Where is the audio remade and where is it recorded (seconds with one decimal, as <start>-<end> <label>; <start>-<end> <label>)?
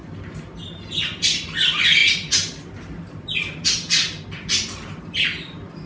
0.0-5.9 recorded